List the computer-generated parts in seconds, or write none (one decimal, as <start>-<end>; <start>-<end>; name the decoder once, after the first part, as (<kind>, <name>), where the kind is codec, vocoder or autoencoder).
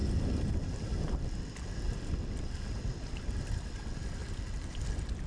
none